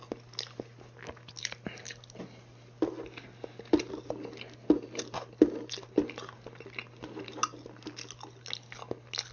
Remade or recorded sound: recorded